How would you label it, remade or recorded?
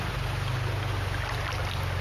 recorded